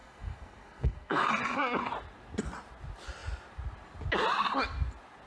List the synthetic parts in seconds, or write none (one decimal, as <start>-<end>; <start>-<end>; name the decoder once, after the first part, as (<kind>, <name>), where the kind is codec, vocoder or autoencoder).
0.0-1.3 (codec, SNAC)

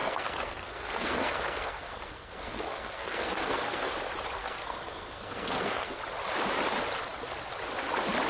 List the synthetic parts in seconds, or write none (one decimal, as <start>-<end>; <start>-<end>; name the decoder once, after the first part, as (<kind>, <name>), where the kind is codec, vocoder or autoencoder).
0.0-3.9 (codec, SNAC); 4.4-6.0

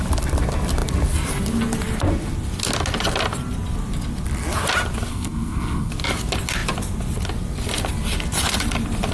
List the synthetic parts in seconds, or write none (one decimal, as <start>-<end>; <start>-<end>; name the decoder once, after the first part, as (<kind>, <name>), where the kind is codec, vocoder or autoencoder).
5.1-5.9 (codec, SNAC)

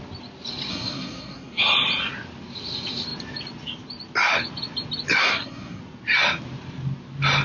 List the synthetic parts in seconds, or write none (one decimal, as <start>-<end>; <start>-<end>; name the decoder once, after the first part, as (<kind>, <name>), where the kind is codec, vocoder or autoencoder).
0.7-1.6 (codec, SNAC); 5.2-5.8

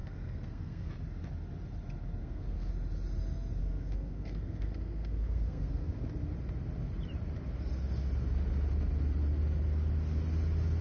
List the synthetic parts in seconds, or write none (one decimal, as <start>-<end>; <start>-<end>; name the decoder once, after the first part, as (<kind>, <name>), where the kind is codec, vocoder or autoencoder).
0.0-0.9 (codec, SNAC); 2.2-2.7; 3.6-6.0

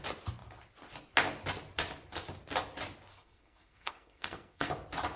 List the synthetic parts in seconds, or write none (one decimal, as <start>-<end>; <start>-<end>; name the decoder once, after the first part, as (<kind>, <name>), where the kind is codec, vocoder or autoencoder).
3.1-4.7 (codec, SNAC)